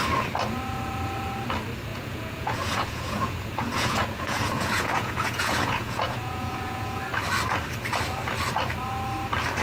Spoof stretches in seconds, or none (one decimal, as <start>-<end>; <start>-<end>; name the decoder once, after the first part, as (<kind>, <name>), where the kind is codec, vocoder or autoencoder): 1.9-7.0 (vocoder, Vocos)